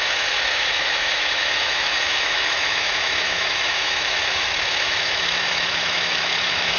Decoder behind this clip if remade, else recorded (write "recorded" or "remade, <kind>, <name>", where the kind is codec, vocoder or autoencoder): remade, autoencoder, DAC-VAE